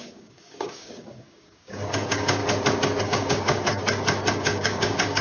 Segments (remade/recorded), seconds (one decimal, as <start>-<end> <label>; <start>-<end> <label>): 0.0-2.4 remade; 2.4-3.0 recorded; 3.0-3.8 remade; 3.8-4.3 recorded; 4.3-5.2 remade